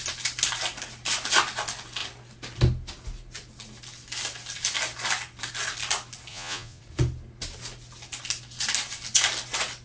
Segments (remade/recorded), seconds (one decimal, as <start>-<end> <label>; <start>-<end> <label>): 0.0-6.3 recorded; 6.3-6.8 remade; 6.8-9.8 recorded